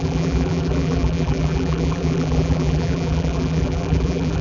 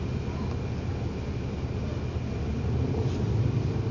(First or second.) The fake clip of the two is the first